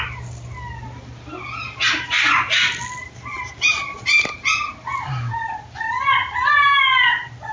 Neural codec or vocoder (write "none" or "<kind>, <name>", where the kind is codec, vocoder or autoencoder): none